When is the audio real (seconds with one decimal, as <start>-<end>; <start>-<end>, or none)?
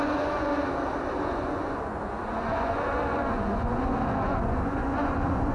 0.5-1.2